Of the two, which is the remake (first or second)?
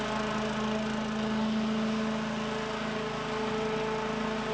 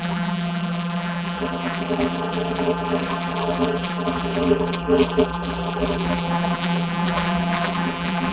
second